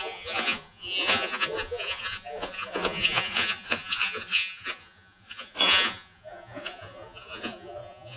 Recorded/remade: remade